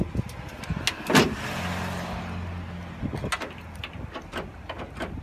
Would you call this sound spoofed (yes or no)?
no